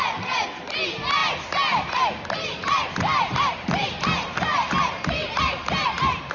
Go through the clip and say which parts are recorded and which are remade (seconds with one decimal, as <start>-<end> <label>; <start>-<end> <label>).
0.0-6.3 recorded